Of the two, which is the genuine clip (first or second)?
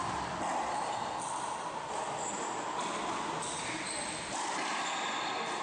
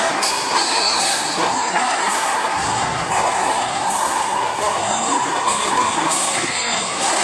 first